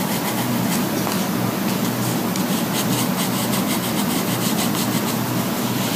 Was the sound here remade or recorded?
recorded